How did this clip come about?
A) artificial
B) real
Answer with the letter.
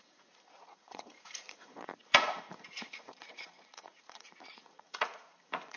A